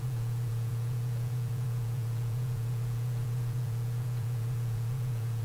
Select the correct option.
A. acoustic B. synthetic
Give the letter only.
B